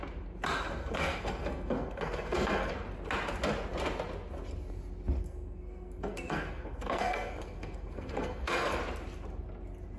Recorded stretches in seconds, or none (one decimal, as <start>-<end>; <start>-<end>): 0.0-0.8; 2.7-5.2; 8.8-10.0